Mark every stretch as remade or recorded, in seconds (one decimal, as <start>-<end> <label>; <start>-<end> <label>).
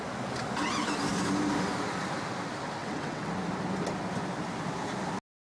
0.0-2.8 recorded; 2.8-3.3 remade; 3.3-5.5 recorded